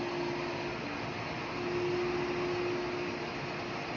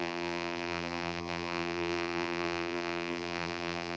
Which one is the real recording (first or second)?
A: first